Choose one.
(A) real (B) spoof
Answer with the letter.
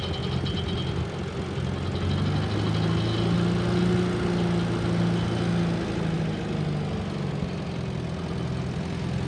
A